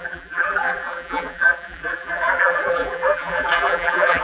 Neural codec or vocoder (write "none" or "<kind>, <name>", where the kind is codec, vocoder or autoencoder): vocoder, BigVGAN v2